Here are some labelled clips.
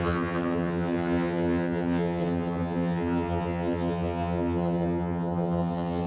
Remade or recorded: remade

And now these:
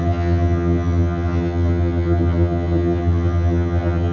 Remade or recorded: remade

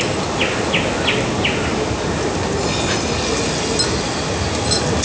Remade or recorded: recorded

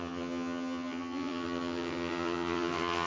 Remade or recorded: remade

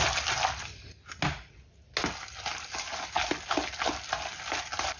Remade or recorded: recorded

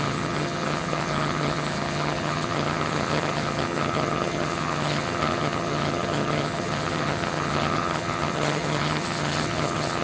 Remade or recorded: remade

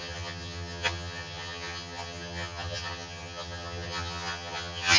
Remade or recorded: remade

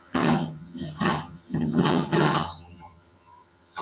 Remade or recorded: remade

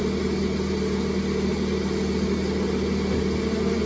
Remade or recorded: recorded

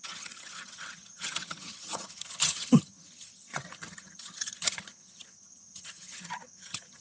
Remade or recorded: remade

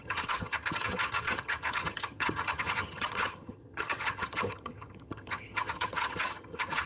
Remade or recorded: remade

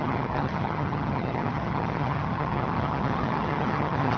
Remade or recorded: remade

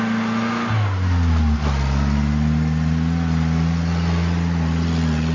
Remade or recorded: recorded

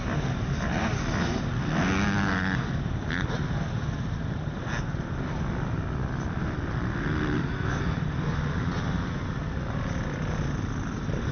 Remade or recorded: recorded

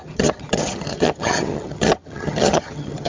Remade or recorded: remade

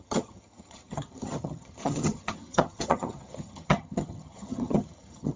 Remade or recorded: remade